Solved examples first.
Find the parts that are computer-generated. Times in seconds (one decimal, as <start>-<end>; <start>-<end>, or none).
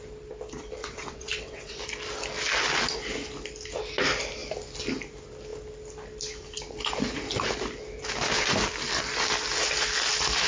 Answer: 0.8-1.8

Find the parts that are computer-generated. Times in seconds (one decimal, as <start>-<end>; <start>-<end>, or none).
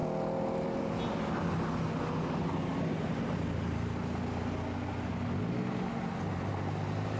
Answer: none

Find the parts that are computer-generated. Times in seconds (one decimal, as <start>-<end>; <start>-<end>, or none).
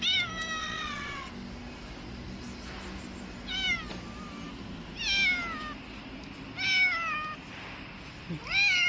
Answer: 0.6-1.3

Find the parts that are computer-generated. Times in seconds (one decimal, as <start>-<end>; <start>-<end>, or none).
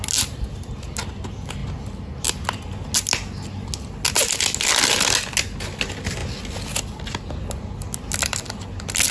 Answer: none